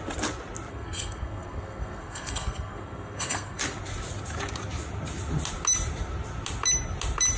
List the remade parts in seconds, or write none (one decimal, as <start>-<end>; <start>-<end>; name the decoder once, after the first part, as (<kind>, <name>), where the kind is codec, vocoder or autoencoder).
0.7-3.6 (codec, SNAC)

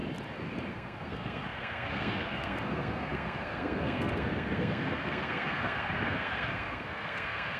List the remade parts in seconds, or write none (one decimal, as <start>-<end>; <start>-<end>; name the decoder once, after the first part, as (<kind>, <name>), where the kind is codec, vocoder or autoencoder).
0.7-7.6 (codec, SNAC)

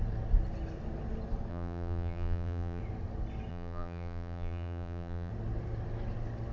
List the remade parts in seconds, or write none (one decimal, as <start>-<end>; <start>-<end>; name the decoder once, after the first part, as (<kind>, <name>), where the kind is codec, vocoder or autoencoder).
1.5-2.8 (vocoder, BigVGAN v2); 3.5-5.3

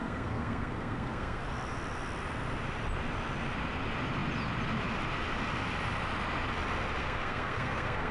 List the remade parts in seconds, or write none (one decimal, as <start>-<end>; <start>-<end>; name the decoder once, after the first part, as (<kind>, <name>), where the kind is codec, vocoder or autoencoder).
0.0-1.4 (codec, SNAC); 7.0-8.1